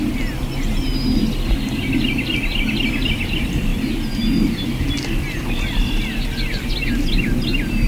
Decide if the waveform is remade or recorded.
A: recorded